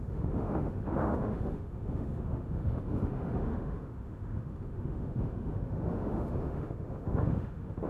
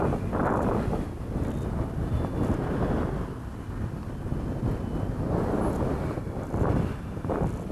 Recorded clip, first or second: second